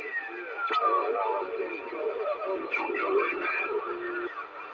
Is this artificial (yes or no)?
no